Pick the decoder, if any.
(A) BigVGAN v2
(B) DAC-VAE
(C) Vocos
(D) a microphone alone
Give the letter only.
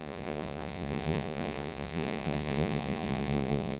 C